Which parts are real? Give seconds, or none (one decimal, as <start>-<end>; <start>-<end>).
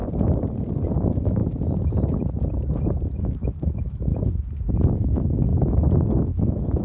0.0-0.9; 1.4-3.1; 4.1-4.7